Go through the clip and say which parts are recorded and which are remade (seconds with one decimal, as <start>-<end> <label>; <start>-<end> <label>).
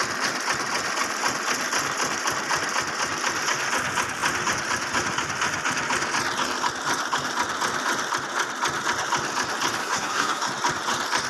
0.0-9.8 recorded; 9.8-10.5 remade; 10.5-11.3 recorded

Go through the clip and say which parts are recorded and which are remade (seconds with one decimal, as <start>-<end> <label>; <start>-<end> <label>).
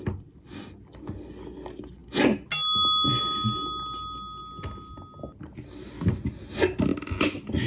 0.0-7.7 recorded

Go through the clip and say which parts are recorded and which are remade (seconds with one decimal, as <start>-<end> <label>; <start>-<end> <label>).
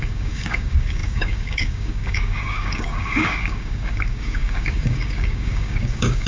0.0-6.3 remade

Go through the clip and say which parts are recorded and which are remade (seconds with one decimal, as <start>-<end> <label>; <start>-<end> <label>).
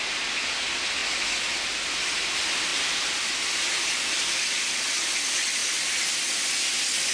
0.0-7.1 recorded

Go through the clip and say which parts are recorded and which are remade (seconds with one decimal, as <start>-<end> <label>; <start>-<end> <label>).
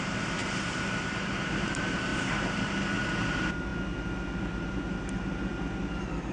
0.0-3.7 remade; 3.7-4.4 recorded; 4.4-5.5 remade; 5.5-6.3 recorded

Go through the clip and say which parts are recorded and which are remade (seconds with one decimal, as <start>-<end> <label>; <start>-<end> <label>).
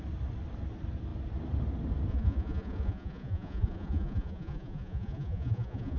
0.0-2.1 recorded; 2.1-6.0 remade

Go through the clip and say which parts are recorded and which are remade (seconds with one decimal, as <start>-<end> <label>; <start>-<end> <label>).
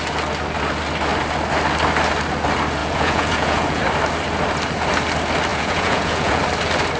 0.0-2.8 recorded; 2.8-3.8 remade; 3.8-5.5 recorded; 5.5-6.4 remade; 6.4-7.0 recorded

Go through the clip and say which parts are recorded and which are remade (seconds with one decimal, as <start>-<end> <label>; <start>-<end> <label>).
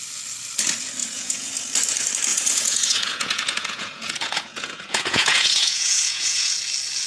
0.0-1.0 recorded; 1.0-1.5 remade; 1.5-2.3 recorded; 2.3-6.6 remade; 6.6-7.1 recorded